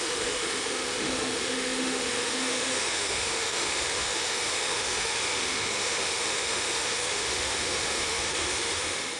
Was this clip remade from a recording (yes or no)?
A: yes